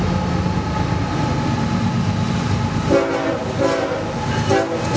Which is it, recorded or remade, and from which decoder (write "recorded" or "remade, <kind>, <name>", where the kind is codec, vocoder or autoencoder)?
recorded